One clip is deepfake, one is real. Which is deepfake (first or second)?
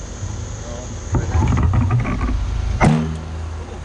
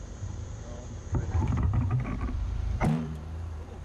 second